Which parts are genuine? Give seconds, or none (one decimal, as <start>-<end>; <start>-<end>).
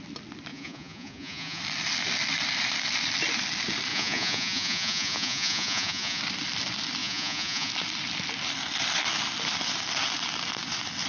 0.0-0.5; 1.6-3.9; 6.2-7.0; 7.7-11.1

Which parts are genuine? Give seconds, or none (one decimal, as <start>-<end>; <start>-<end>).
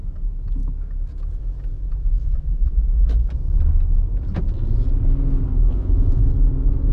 0.0-2.2; 3.1-5.7; 6.3-6.9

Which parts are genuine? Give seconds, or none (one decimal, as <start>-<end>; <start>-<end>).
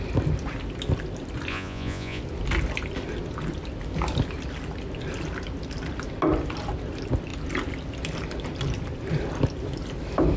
0.0-1.5; 2.2-10.4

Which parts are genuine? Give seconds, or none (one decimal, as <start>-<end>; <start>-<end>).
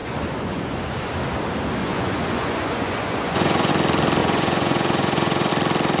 1.1-1.8; 3.7-4.2; 5.5-6.0